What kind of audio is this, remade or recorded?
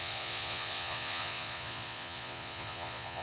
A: remade